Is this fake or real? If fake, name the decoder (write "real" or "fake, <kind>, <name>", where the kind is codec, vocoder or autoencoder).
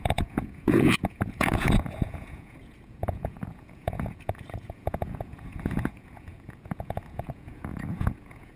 fake, vocoder, Vocos